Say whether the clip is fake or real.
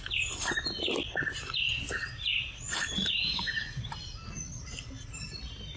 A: real